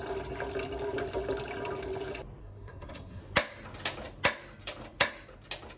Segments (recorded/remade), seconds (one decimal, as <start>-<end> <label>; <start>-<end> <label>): 0.0-2.4 recorded; 2.4-3.2 remade; 3.2-5.8 recorded